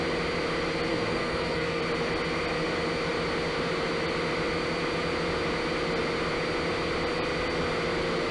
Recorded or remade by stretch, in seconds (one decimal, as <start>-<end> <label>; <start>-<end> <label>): 0.0-0.9 recorded; 0.9-1.8 remade; 1.8-8.3 recorded